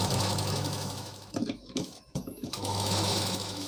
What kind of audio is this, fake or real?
fake